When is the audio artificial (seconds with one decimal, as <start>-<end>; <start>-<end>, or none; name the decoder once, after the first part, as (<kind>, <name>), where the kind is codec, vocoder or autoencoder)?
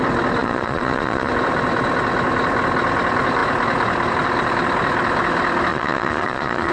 0.4-1.3 (vocoder, Vocos); 5.7-6.7